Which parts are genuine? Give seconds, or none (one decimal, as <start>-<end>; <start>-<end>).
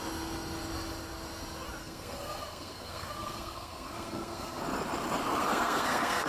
0.0-1.8; 4.6-5.4